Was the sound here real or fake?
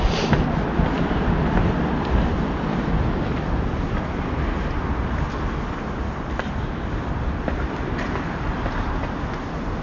real